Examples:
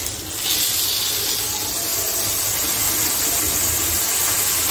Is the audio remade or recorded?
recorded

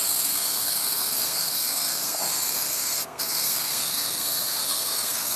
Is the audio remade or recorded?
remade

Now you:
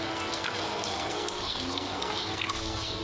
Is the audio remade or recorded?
remade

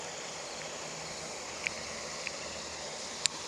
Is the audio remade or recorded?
recorded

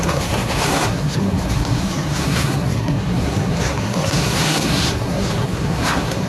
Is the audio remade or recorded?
remade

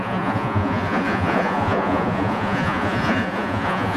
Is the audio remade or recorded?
remade